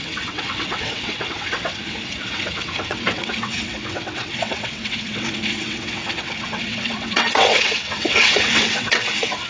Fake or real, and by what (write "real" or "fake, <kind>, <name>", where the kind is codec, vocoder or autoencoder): fake, vocoder, WaveNeXt